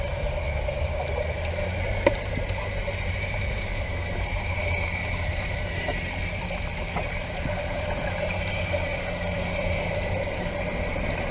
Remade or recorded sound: remade